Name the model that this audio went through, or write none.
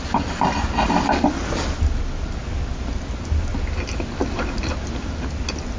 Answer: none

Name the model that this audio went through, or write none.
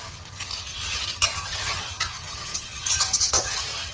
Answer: vocoder, HiFi-GAN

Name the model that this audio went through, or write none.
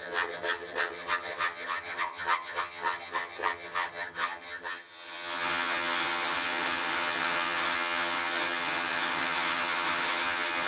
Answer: vocoder, HiFi-GAN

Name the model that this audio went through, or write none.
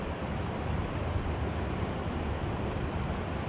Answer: none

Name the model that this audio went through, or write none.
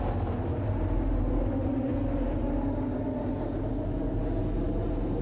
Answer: none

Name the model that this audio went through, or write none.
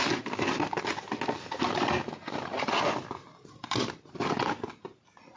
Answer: none